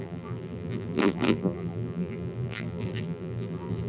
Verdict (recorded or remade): remade